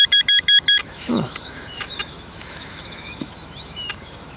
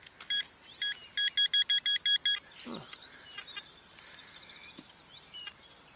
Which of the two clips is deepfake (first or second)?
first